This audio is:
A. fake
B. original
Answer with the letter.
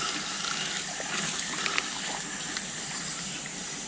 B